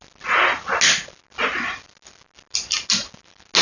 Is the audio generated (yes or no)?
no